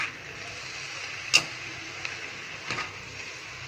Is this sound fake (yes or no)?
no